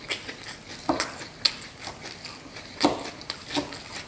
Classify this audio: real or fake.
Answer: real